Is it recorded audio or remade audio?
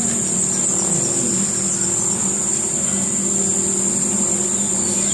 recorded